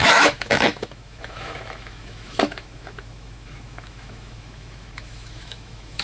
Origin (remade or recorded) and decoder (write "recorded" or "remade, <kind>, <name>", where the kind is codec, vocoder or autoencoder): remade, autoencoder, DAC-VAE